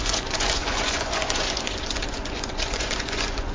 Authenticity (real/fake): fake